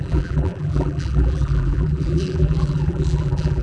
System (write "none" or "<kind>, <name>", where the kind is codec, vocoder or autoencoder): vocoder, BigVGAN v2